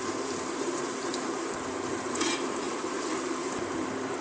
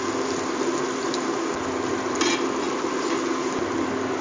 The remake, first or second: first